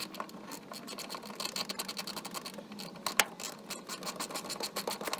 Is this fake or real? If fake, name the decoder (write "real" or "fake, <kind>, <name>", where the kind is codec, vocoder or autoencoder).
real